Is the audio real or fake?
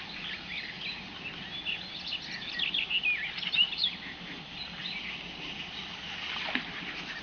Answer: real